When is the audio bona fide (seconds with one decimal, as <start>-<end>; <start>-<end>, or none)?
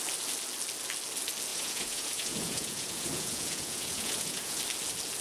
0.0-1.5; 4.6-5.2